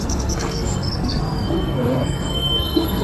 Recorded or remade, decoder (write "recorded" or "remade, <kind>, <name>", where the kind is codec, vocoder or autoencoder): remade, codec, SNAC